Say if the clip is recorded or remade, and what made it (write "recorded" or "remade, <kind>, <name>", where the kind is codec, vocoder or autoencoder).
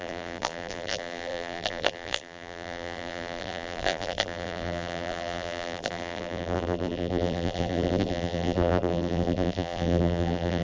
remade, vocoder, BigVGAN v2